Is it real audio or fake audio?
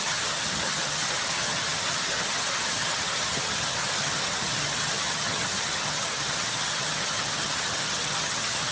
fake